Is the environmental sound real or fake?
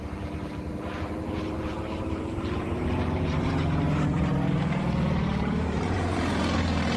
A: fake